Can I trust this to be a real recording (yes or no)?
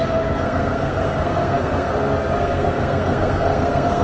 no